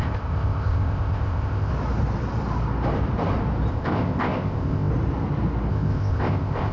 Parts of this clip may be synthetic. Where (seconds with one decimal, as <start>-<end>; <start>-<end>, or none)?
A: 0.0-1.7; 3.7-4.9; 5.7-6.7